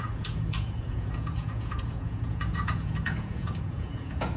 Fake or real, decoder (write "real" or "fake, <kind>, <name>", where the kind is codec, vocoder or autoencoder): fake, vocoder, Vocos